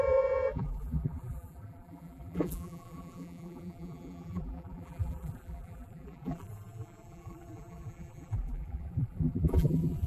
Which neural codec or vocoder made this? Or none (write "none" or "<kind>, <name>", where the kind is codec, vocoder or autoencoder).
vocoder, BigVGAN v2